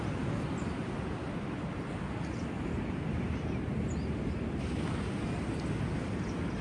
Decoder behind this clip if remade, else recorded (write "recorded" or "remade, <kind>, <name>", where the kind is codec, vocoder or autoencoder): recorded